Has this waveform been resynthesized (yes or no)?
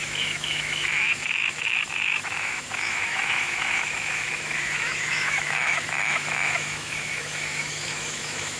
yes